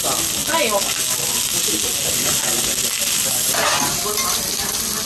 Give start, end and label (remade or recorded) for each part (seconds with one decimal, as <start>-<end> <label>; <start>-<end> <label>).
0.0-5.1 recorded